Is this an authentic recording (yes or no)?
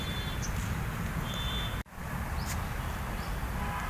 yes